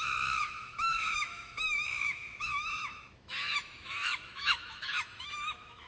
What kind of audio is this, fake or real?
fake